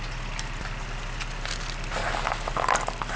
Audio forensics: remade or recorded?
recorded